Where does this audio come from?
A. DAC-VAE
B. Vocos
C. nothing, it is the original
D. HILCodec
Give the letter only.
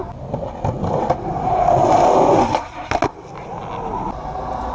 C